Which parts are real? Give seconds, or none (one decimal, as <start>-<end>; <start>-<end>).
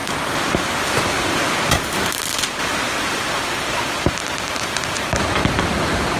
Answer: 0.0-3.7; 5.4-6.2